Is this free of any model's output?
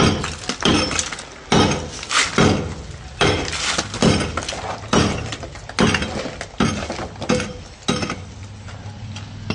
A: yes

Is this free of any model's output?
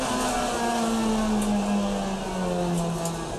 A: yes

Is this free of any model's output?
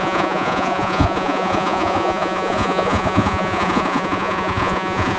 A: no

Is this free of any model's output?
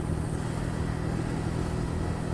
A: yes